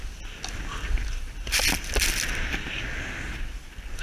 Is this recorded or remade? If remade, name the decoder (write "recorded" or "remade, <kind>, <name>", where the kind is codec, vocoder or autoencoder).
recorded